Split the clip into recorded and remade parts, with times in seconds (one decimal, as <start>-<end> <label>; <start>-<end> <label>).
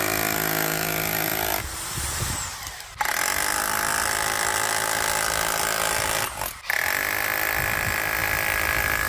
0.0-1.3 recorded; 1.3-2.3 remade; 2.3-9.1 recorded